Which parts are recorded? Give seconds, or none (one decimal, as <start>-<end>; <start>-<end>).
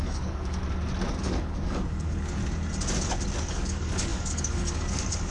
0.6-1.2; 2.4-3.4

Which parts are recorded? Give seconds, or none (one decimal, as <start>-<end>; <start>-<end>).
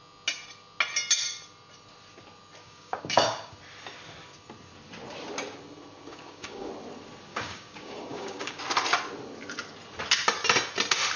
0.0-2.6; 3.5-6.1; 6.7-7.3; 8.6-11.2